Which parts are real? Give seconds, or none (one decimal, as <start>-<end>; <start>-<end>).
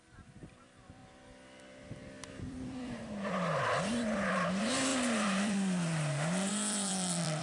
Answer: 1.0-2.3